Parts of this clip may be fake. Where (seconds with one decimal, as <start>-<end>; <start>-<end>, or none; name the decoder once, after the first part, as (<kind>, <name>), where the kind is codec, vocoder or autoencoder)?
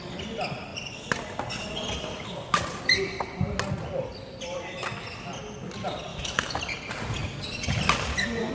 6.1-6.6 (autoencoder, DAC-VAE)